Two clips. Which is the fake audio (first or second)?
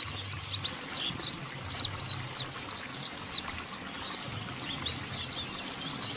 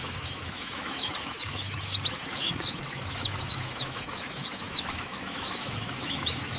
second